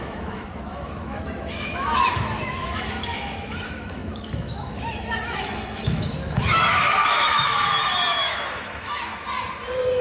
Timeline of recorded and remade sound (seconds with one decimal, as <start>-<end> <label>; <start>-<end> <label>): 0.0-9.1 remade; 9.1-10.0 recorded